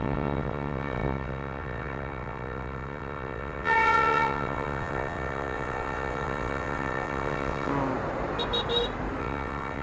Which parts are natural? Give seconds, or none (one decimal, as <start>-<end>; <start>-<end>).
7.7-9.2